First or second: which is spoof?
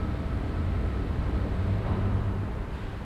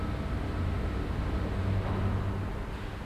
first